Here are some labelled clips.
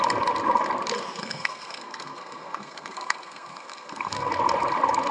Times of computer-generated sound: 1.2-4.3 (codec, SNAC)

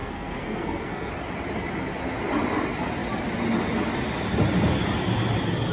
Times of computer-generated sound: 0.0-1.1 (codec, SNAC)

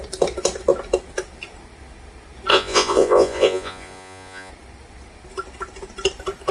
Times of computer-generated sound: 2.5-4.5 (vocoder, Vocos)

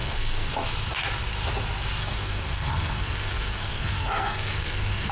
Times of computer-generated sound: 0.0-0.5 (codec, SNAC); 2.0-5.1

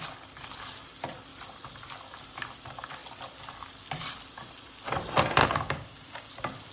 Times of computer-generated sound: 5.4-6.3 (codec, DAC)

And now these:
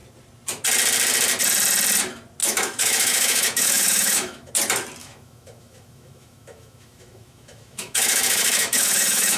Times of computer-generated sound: 2.4-4.5 (autoencoder, DAC-VAE); 5.0-9.4